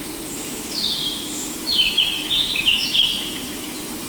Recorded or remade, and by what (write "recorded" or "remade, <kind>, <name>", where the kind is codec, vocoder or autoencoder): remade, autoencoder, DAC-VAE